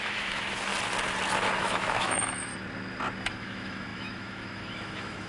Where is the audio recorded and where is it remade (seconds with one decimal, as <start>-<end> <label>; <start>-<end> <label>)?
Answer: 0.0-0.7 remade; 0.7-1.6 recorded; 1.6-2.5 remade; 2.5-3.3 recorded; 3.3-5.3 remade